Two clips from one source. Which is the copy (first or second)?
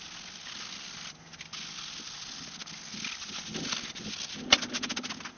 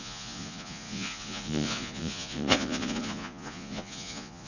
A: second